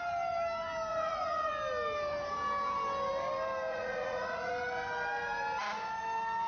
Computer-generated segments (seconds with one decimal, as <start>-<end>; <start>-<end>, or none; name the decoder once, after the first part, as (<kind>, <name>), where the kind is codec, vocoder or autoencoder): 0.9-1.5 (vocoder, Vocos); 3.7-4.5